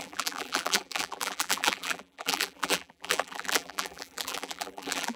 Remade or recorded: remade